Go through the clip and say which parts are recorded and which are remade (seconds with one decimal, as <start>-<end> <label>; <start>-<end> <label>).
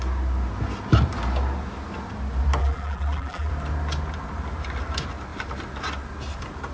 0.0-2.6 recorded; 2.6-3.5 remade; 3.5-6.7 recorded